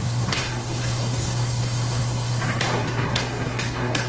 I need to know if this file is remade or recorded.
remade